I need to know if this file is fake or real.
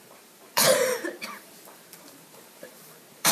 fake